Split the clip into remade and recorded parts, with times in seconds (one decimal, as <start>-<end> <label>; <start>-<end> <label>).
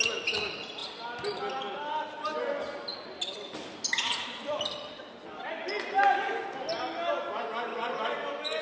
0.0-8.6 recorded